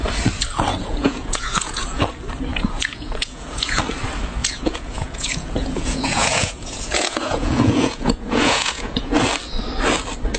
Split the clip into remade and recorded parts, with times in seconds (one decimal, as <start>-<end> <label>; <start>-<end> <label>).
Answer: 0.0-0.8 recorded; 0.8-2.0 remade; 2.0-2.5 recorded; 2.5-3.8 remade; 3.8-4.4 recorded; 4.4-9.1 remade; 9.1-10.4 recorded